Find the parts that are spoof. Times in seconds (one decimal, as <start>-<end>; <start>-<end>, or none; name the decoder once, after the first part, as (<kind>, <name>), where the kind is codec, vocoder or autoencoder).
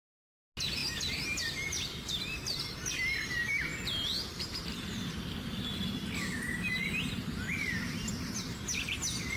none